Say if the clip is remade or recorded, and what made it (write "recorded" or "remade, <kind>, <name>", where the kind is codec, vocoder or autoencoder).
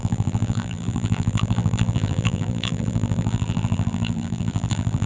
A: remade, vocoder, BigVGAN v2